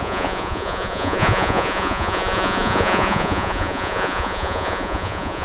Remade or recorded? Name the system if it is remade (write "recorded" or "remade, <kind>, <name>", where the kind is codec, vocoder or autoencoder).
remade, vocoder, Vocos